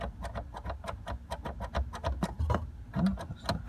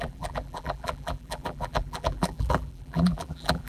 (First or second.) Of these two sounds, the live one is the first